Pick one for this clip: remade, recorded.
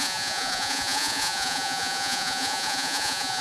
remade